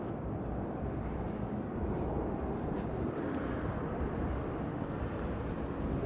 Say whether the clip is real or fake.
real